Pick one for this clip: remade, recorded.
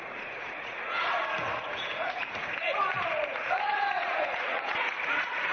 remade